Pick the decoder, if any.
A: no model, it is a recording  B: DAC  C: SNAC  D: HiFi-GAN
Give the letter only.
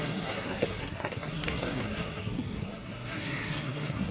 C